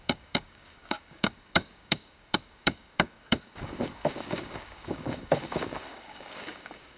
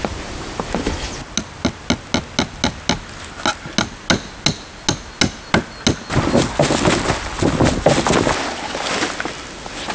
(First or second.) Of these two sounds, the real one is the second